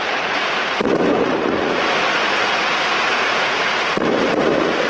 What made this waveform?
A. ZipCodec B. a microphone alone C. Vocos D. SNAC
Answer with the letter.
C